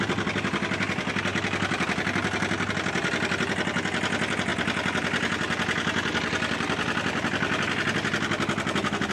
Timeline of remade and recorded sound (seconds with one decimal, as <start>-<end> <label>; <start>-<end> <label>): 0.0-9.1 recorded